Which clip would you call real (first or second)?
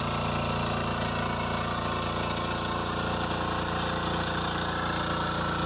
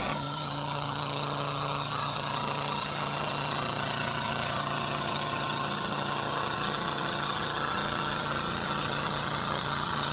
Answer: first